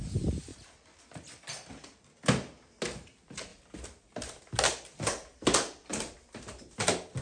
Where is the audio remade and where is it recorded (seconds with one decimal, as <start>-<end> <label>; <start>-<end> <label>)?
0.0-7.2 recorded